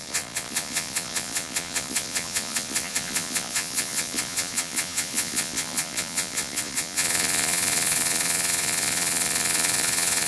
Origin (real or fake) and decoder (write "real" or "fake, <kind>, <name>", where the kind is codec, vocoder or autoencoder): fake, vocoder, Vocos